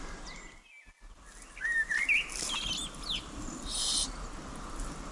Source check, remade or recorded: recorded